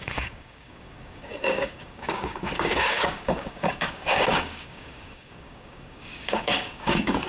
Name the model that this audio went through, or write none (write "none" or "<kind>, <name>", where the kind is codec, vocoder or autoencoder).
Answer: codec, DAC